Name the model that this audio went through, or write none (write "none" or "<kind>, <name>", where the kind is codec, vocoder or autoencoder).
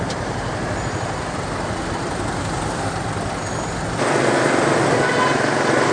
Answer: none